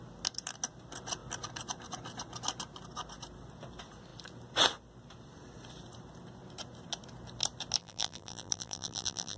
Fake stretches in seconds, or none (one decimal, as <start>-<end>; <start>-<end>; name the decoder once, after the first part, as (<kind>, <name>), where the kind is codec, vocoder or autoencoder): 7.8-9.4 (vocoder, BigVGAN v2)